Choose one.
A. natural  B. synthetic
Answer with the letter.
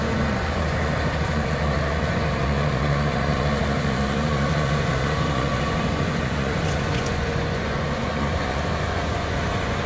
B